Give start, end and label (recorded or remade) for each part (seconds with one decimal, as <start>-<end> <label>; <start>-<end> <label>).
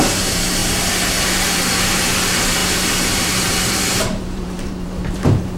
0.0-0.6 remade; 0.6-1.2 recorded; 1.2-5.6 remade